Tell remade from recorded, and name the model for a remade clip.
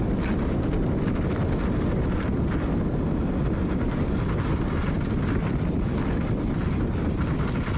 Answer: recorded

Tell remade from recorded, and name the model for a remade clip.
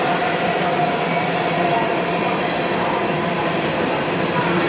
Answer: recorded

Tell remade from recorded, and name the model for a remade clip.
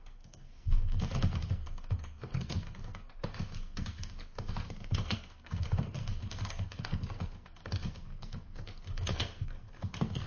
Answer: remade, codec, SNAC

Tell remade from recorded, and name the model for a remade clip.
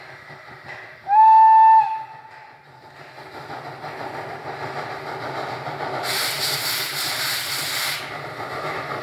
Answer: recorded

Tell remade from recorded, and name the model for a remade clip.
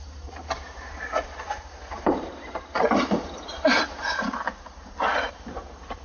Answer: remade, vocoder, BigVGAN v2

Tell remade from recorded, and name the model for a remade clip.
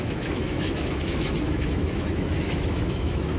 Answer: remade, autoencoder, DAC-VAE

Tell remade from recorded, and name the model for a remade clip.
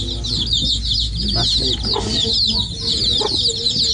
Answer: recorded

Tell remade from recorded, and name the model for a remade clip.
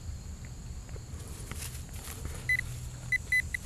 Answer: recorded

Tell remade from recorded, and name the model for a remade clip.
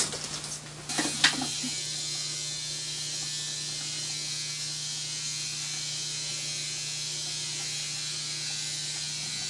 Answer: recorded